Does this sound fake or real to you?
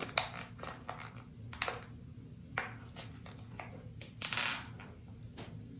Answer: real